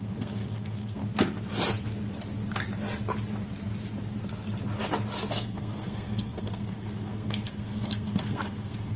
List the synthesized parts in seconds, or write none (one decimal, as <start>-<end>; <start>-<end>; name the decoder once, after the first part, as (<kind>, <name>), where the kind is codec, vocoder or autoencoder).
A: 0.0-1.0 (codec, SNAC); 5.3-9.0